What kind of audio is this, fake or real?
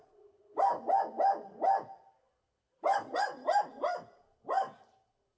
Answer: real